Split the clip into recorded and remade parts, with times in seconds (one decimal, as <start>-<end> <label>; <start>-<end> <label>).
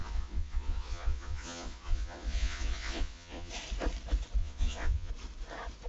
0.0-3.5 remade; 3.5-4.4 recorded; 4.4-5.1 remade; 5.1-5.9 recorded